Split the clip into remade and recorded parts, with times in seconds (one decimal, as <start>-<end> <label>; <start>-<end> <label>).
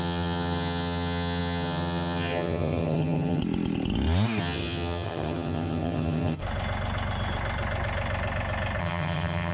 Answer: 0.0-3.4 remade; 3.4-4.4 recorded; 4.4-6.4 remade; 6.4-8.8 recorded; 8.8-9.5 remade